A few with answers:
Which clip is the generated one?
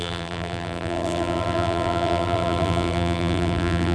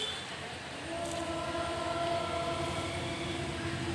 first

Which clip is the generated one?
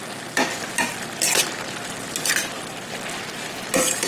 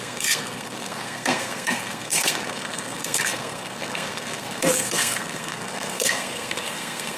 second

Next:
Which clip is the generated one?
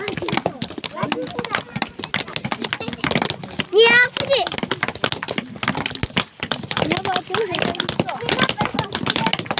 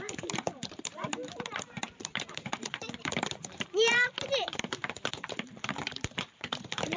second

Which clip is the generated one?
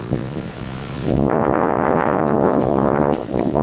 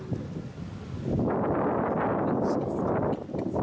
first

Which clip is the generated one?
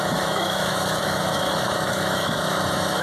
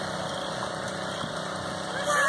first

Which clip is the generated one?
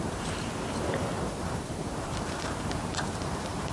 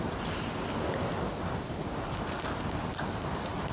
first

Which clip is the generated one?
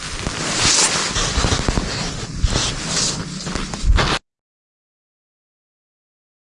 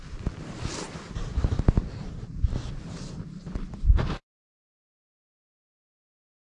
second